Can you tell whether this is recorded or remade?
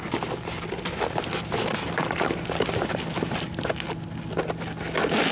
recorded